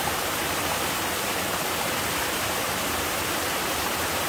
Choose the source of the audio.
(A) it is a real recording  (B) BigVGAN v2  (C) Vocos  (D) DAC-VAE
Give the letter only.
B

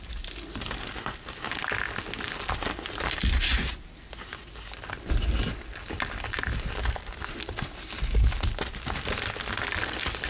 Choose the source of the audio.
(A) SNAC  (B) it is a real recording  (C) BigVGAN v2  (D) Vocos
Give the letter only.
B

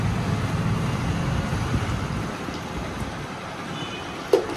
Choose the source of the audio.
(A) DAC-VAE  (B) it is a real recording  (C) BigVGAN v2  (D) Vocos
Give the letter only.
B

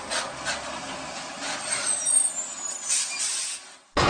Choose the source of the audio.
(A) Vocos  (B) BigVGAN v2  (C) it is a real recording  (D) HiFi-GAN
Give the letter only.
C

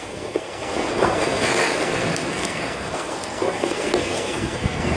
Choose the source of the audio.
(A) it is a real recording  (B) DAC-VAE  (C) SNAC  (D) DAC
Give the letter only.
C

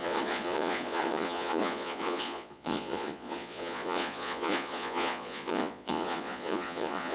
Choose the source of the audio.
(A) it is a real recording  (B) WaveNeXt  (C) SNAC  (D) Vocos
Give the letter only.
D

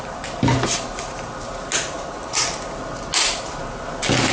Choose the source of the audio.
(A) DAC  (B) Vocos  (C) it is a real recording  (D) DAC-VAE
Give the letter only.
C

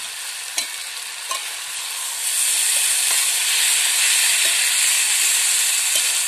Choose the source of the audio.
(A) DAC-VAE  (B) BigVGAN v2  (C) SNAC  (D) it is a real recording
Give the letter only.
D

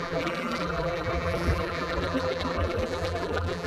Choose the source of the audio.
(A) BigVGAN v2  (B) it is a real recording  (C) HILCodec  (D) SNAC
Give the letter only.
A